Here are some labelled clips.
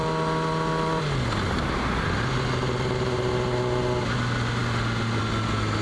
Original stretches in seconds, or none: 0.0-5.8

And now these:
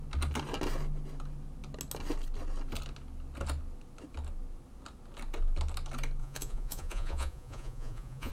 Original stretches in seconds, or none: 0.0-6.2

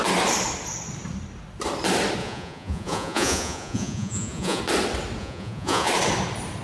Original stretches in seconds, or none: 0.0-2.2; 4.6-5.2; 5.9-6.6

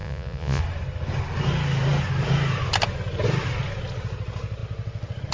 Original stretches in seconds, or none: 0.6-5.3

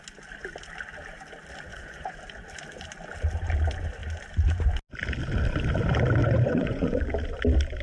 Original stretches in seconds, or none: 0.0-1.7; 2.2-6.2; 7.0-7.8

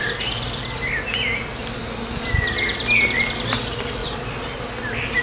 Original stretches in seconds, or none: 0.0-5.2

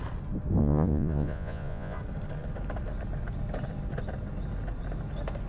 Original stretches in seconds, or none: 0.0-0.6; 2.0-5.5